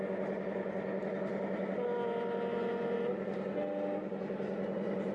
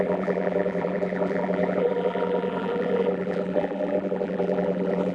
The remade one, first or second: second